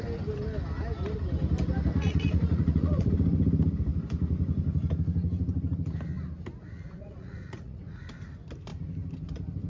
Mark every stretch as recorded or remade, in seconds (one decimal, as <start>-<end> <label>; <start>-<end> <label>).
0.0-1.9 recorded; 1.9-3.1 remade; 3.1-6.6 recorded; 6.6-8.0 remade; 8.0-9.7 recorded